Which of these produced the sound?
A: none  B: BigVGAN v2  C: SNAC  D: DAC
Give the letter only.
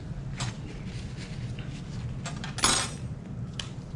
A